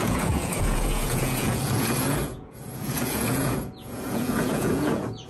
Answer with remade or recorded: remade